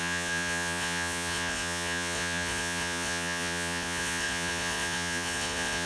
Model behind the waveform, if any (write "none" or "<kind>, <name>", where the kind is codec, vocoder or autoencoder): vocoder, Vocos